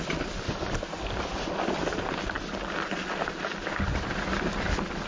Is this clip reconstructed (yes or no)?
no